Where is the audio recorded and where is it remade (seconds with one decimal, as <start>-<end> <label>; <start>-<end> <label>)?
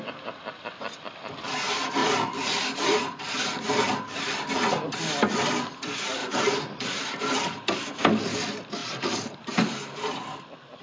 0.0-2.0 recorded; 2.0-4.7 remade; 4.7-6.2 recorded; 6.2-7.0 remade; 7.0-8.8 recorded; 8.8-10.4 remade; 10.4-10.8 recorded